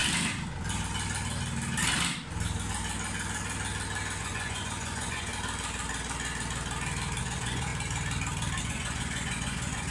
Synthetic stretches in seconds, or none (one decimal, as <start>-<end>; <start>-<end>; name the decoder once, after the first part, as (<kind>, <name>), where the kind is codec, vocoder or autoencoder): 4.2-5.3 (vocoder, Vocos); 7.2-7.7; 8.6-9.9

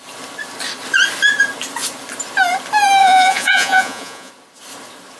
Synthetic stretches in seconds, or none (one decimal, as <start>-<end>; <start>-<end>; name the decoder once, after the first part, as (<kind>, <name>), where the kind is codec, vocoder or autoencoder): 3.0-4.3 (vocoder, Vocos)